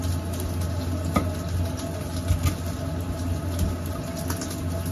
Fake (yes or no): no